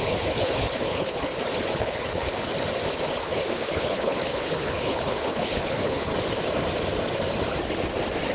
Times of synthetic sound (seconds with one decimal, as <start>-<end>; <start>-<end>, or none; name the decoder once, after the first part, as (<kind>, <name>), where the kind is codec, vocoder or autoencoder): 0.0-1.3 (codec, HILCodec); 1.8-2.5; 3.2-6.1